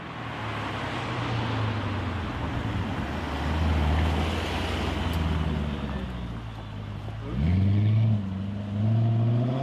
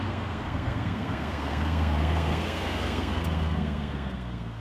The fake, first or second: second